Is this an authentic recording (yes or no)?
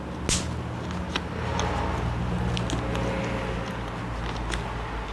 yes